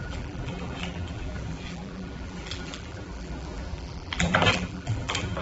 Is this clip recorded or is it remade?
remade